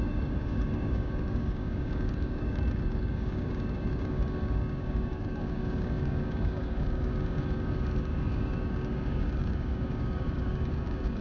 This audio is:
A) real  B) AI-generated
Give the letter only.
B